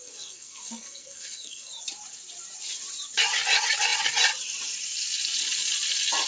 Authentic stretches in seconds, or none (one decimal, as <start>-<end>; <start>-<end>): 1.7-6.3